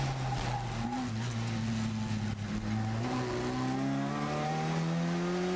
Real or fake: real